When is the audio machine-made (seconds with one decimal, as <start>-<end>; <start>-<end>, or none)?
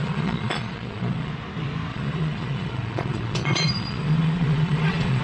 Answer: 0.0-1.3; 1.9-5.2